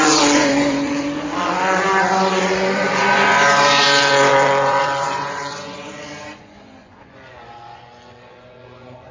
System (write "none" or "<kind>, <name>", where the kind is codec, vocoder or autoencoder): vocoder, Vocos